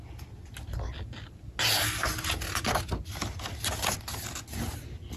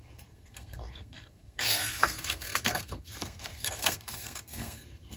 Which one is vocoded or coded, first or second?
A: second